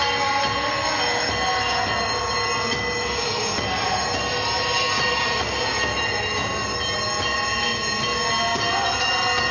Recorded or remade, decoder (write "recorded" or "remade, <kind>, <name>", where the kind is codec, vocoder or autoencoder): recorded